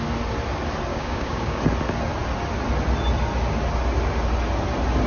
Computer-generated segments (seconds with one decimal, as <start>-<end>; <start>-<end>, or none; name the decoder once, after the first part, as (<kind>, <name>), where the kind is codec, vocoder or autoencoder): 0.9-1.6 (codec, DAC)